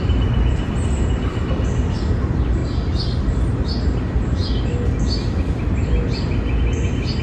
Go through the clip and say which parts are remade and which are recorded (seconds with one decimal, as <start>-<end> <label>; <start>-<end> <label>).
0.0-2.6 remade; 2.6-3.2 recorded; 3.2-4.4 remade; 4.4-7.2 recorded

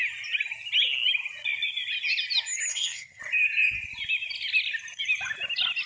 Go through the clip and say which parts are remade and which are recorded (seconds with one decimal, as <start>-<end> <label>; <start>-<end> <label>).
0.0-2.7 recorded; 2.7-3.2 remade; 3.2-5.9 recorded